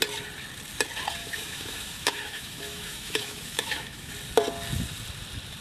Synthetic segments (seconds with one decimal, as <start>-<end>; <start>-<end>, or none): 1.2-4.1